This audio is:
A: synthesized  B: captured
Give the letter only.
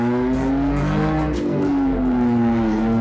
A